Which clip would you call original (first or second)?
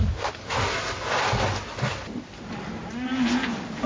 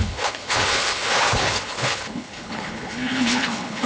first